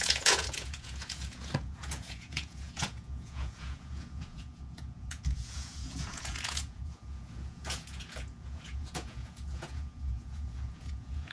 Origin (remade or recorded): remade